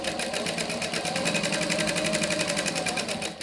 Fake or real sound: real